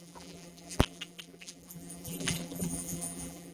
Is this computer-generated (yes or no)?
yes